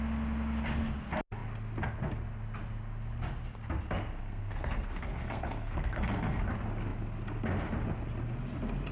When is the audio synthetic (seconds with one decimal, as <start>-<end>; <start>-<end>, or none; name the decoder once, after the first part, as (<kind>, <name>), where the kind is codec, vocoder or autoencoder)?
4.2-6.5 (codec, SNAC)